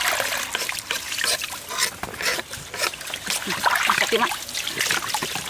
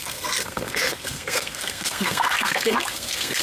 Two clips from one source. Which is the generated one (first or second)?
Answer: second